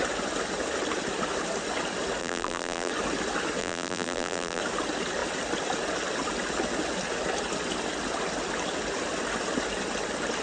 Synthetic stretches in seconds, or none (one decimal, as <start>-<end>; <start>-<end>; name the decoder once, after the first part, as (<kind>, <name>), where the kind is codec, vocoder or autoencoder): 2.2-2.9 (vocoder, BigVGAN v2); 3.6-4.6